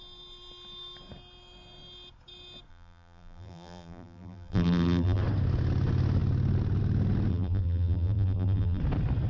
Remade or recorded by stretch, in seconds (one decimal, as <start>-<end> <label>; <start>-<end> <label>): 0.0-2.7 recorded; 2.7-5.2 remade; 5.2-7.3 recorded; 7.3-8.8 remade; 8.8-9.3 recorded